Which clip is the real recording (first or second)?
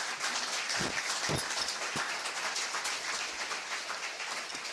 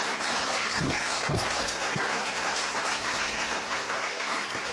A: first